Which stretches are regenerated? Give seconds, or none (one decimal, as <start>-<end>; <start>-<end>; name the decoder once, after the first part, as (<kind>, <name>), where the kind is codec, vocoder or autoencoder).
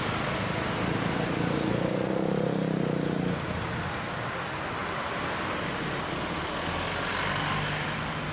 none